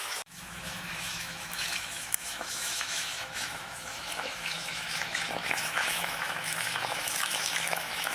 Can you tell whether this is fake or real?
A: fake